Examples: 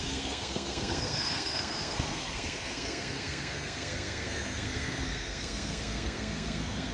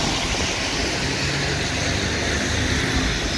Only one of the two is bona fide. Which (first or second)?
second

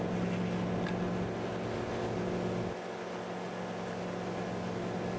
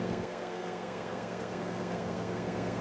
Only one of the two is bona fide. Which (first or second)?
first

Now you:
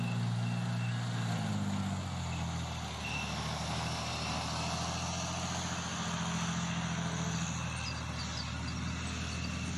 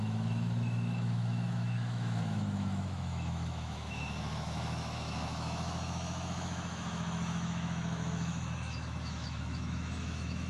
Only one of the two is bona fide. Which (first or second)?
first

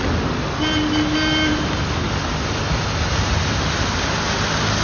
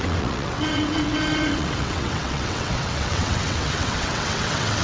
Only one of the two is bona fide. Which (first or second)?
first